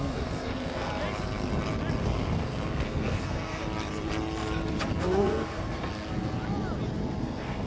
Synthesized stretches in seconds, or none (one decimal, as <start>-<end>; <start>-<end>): 0.0-0.9; 2.0-3.6; 5.0-5.9; 7.2-7.7